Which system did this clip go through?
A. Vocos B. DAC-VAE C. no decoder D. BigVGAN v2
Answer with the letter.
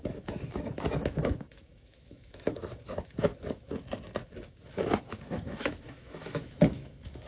B